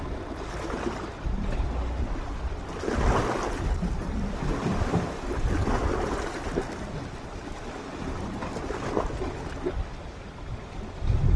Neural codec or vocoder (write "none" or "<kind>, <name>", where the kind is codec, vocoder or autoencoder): none